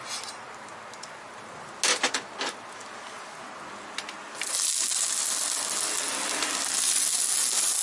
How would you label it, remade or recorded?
recorded